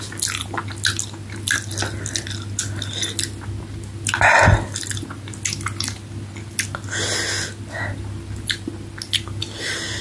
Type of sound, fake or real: real